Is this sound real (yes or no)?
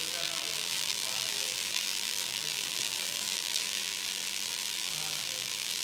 no